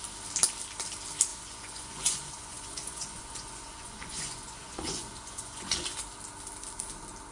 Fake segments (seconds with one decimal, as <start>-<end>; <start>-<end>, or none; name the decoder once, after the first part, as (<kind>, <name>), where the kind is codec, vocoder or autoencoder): 1.3-5.7 (vocoder, Vocos)